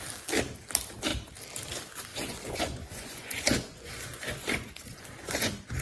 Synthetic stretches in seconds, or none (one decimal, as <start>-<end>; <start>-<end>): 2.1-5.8